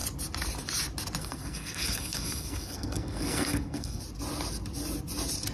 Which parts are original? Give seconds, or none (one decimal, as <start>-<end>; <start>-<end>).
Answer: 0.0-1.2; 4.0-5.5